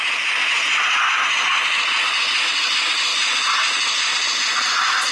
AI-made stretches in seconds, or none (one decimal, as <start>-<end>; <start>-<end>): none